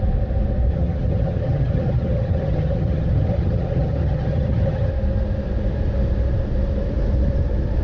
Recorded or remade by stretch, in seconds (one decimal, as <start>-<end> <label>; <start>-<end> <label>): 0.0-0.7 recorded; 0.7-4.9 remade; 4.9-7.8 recorded